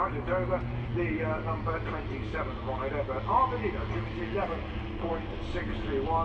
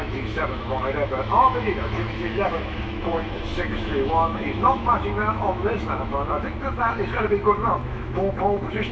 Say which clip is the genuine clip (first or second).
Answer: first